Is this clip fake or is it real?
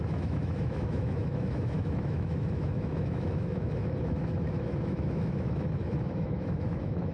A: fake